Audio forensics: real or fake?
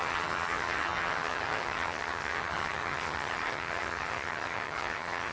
fake